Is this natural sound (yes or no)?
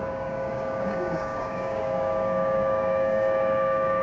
no